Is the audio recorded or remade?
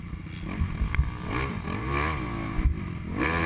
recorded